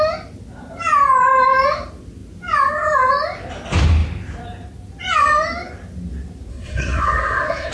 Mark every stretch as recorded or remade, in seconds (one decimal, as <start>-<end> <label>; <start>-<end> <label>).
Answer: 0.0-6.5 recorded; 6.5-7.7 remade